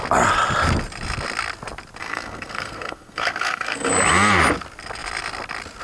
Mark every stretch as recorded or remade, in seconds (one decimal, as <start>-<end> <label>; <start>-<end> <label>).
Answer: 0.0-2.0 recorded; 2.0-3.9 remade; 3.9-5.8 recorded